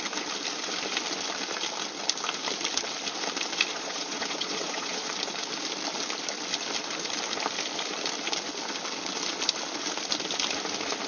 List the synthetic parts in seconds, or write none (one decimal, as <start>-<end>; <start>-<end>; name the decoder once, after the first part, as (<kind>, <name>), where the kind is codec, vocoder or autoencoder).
3.7-5.1 (vocoder, Vocos)